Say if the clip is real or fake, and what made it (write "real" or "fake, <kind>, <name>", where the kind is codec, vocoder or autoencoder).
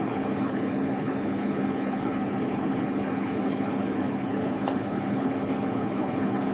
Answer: fake, codec, HILCodec